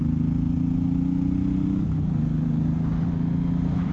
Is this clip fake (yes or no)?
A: no